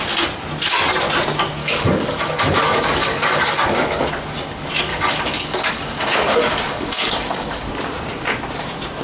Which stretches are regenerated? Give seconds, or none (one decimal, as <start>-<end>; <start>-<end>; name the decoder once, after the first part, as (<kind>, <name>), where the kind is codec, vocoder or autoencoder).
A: 1.6-4.1 (codec, DAC); 4.9-7.7